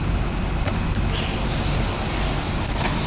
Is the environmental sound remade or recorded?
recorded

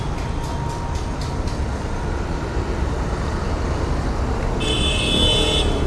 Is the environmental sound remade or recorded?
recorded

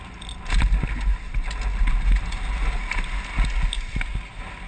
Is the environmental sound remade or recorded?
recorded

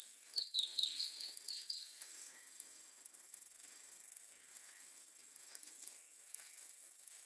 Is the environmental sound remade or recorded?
remade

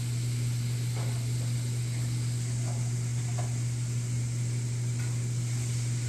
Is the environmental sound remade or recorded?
recorded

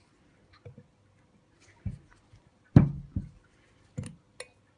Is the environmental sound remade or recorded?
recorded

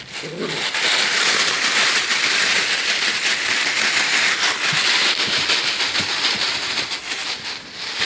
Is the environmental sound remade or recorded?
recorded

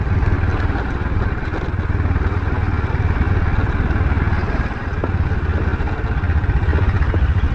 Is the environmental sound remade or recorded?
recorded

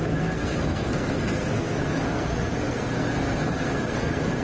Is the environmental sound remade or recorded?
remade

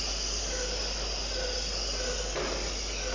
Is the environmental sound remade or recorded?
recorded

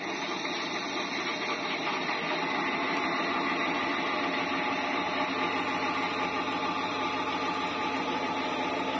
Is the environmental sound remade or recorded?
recorded